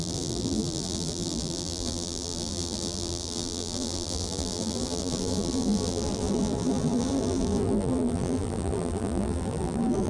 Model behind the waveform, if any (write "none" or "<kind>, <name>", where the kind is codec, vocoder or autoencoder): vocoder, BigVGAN v2